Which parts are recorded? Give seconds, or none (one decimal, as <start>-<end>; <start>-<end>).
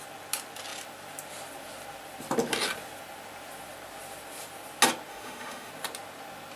0.0-5.1; 5.7-6.6